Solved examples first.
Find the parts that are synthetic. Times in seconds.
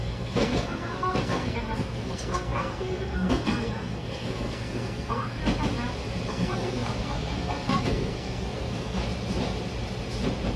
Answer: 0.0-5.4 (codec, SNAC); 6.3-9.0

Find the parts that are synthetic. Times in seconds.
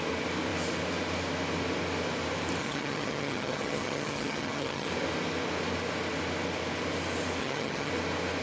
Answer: 2.6-4.9 (vocoder, HiFi-GAN); 7.4-7.9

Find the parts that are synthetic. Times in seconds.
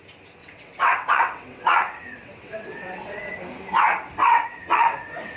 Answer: 0.4-3.3 (vocoder, WaveNeXt); 4.2-5.4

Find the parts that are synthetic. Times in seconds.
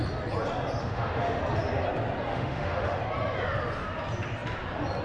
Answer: 0.8-1.4 (autoencoder, DAC-VAE); 2.3-3.0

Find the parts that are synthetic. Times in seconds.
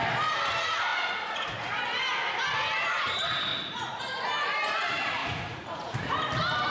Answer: 0.9-1.8 (vocoder, Vocos); 3.5-4.0; 5.2-6.2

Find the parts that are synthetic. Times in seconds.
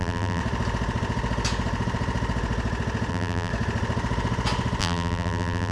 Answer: 0.0-0.4 (vocoder, BigVGAN v2); 3.1-3.5; 4.8-5.7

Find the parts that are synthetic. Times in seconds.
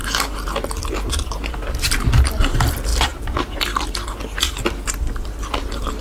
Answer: none